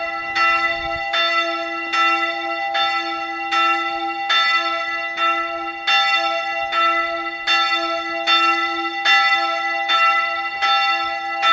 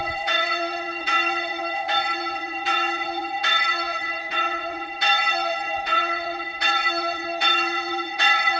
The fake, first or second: second